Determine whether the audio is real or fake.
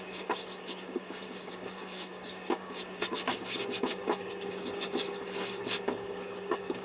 fake